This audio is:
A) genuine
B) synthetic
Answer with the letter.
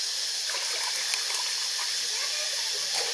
A